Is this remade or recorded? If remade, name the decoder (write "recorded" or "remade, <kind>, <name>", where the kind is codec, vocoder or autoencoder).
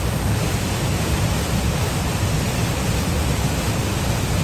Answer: recorded